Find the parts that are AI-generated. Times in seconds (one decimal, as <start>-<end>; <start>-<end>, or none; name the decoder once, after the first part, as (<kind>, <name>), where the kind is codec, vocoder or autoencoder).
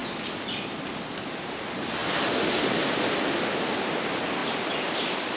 none